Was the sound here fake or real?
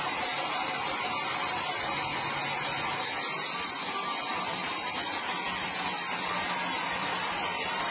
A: real